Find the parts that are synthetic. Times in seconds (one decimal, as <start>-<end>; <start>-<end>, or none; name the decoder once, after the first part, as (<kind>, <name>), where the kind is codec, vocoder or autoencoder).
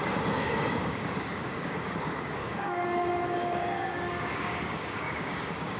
0.0-5.8 (codec, DAC)